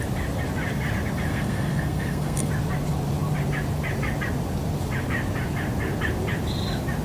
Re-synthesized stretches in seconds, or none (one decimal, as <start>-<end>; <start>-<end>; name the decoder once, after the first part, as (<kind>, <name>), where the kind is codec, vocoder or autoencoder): 1.3-2.5 (codec, SNAC)